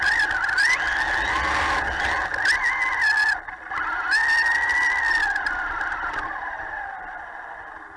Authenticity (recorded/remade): recorded